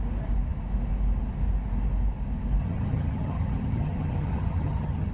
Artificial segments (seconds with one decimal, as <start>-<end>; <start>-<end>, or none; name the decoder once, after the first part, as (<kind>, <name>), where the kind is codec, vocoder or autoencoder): 2.6-5.1 (vocoder, HiFi-GAN)